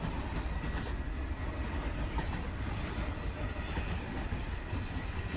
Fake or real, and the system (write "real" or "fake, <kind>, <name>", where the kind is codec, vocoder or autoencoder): real